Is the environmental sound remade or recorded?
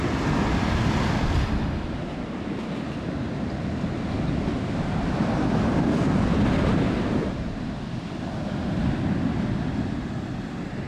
recorded